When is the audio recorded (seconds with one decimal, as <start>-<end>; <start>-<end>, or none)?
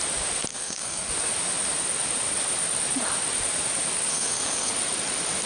0.0-0.5; 1.1-4.1; 4.7-5.5